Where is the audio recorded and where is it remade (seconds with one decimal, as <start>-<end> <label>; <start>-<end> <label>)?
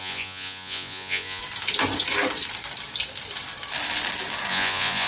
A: 0.0-1.4 remade; 1.4-4.5 recorded; 4.5-5.1 remade